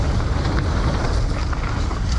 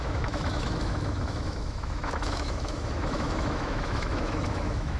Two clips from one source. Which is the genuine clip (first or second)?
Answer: first